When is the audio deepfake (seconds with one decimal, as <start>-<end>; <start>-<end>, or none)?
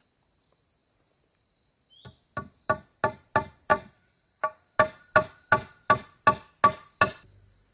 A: 3.7-4.4